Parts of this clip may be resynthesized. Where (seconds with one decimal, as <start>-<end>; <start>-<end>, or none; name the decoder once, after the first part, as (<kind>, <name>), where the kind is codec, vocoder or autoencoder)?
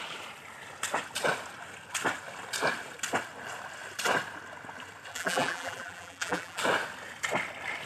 5.1-6.6 (vocoder, BigVGAN v2)